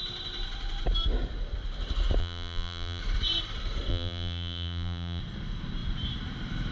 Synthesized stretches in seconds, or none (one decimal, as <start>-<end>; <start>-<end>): 2.2-3.0; 3.9-5.2